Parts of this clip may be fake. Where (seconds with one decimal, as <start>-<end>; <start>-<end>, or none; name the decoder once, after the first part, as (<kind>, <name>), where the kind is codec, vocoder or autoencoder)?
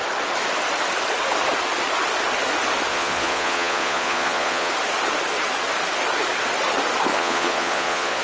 2.9-4.7 (vocoder, Vocos); 7.1-8.2